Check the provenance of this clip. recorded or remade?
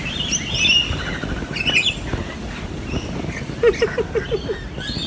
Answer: recorded